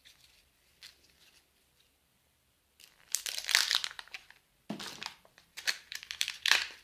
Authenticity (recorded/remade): remade